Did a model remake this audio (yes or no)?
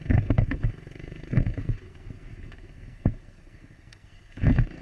yes